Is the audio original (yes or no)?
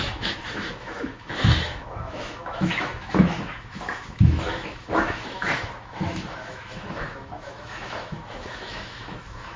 no